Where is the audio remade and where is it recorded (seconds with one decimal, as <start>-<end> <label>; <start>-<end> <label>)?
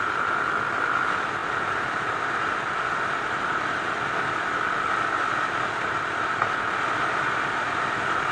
0.0-8.3 recorded